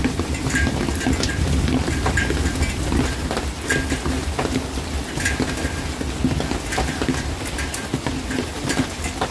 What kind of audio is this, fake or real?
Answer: real